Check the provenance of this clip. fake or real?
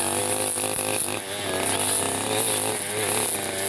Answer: real